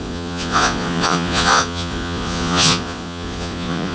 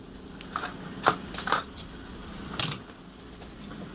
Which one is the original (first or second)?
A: second